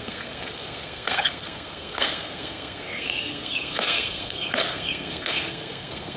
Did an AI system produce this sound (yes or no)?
yes